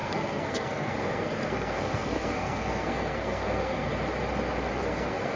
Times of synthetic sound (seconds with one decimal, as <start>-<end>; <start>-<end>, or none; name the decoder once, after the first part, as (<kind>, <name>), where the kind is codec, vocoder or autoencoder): 0.0-3.9 (codec, SNAC); 4.7-5.4